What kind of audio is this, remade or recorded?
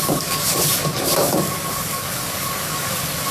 remade